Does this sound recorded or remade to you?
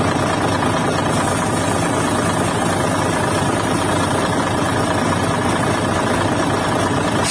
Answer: recorded